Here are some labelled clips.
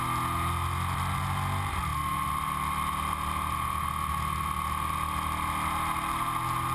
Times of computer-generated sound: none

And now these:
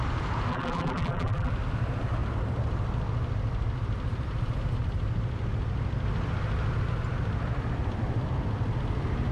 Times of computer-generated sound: 0.5-1.5 (vocoder, BigVGAN v2)

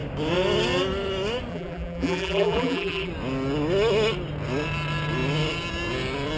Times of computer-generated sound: 1.5-3.1 (vocoder, BigVGAN v2)